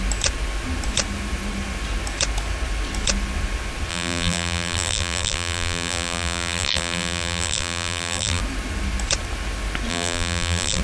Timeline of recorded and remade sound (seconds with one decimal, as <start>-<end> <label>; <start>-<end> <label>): 0.0-3.9 recorded; 3.9-8.4 remade; 8.4-9.9 recorded; 9.9-10.8 remade